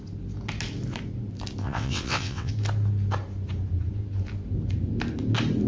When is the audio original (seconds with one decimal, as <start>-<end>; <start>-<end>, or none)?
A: 0.0-1.6; 2.5-5.7